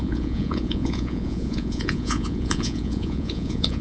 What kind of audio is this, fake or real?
fake